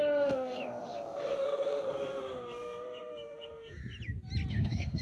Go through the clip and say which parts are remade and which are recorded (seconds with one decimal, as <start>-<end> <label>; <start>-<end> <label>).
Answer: 0.0-3.8 remade; 3.8-4.5 recorded; 4.5-5.0 remade